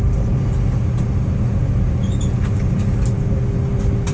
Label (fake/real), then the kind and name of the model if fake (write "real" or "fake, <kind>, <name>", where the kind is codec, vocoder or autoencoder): real